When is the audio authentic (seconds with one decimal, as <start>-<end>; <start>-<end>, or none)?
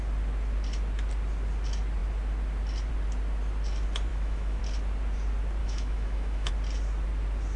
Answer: 0.0-4.1; 4.6-5.6; 6.5-7.6